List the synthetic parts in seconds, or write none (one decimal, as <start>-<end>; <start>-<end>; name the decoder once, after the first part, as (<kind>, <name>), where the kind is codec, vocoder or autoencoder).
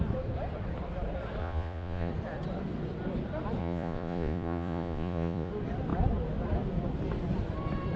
1.4-2.1 (vocoder, Vocos); 3.6-5.5